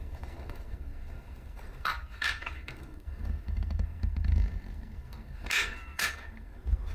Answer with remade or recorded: remade